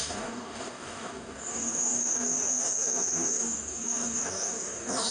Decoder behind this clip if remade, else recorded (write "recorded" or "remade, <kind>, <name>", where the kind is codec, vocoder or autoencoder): remade, codec, DAC